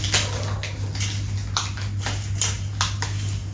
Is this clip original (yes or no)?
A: yes